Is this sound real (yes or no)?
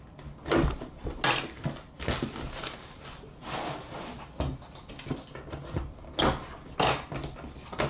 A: yes